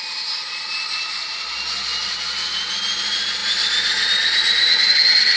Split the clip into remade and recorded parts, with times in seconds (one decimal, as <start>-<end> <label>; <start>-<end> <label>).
0.0-2.0 recorded; 2.0-2.6 remade; 2.6-5.4 recorded